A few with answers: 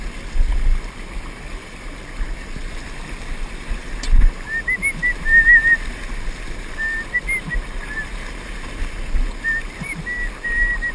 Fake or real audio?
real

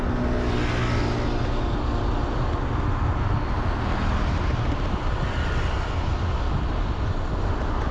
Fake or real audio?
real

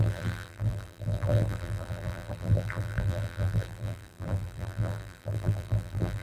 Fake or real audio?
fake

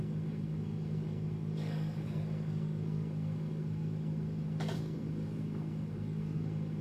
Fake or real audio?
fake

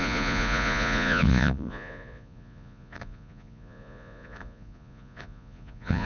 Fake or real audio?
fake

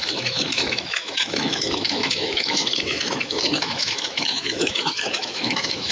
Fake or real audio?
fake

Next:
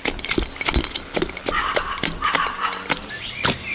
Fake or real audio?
real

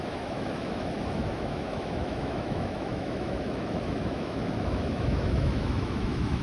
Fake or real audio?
fake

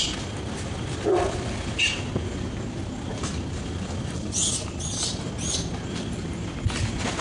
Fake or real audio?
real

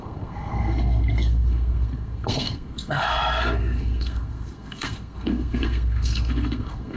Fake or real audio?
fake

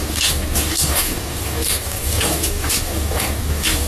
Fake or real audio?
fake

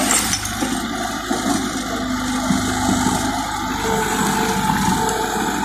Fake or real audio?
real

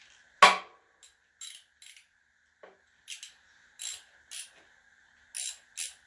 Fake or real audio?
real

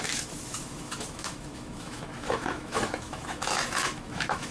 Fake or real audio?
fake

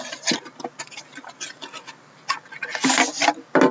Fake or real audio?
real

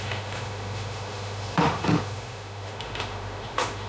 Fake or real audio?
fake